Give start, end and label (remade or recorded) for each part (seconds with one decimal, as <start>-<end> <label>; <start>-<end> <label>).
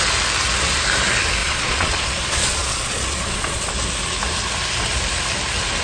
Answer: 0.0-1.4 recorded; 1.4-3.7 remade; 3.7-5.8 recorded